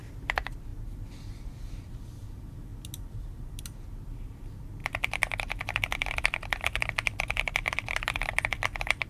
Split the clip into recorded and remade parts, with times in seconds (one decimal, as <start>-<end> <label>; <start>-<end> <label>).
0.0-4.8 remade; 4.8-8.1 recorded; 8.1-9.1 remade